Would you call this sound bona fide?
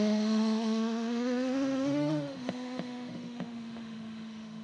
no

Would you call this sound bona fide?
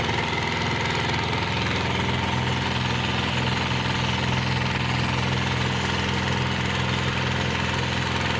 yes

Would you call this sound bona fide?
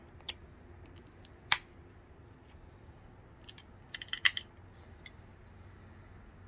yes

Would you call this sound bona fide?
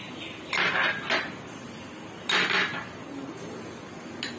yes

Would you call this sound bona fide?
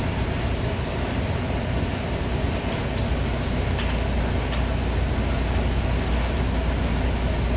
yes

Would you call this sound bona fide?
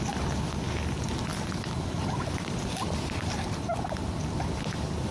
yes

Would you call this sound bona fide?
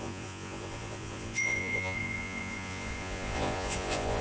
no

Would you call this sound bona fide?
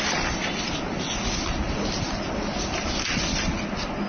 yes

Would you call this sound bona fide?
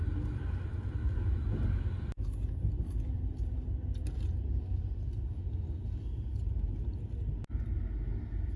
yes